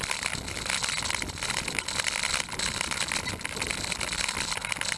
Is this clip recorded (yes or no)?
yes